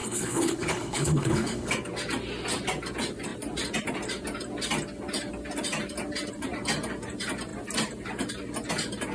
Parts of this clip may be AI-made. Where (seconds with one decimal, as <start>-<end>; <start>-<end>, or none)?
0.0-1.7